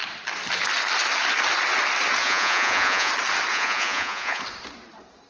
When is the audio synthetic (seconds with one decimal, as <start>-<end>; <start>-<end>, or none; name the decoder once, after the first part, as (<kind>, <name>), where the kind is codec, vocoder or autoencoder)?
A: 2.2-3.1 (vocoder, Vocos); 3.5-4.4